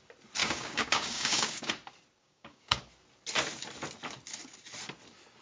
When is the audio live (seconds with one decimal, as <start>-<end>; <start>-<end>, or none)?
0.0-0.4; 1.7-2.2; 2.8-5.4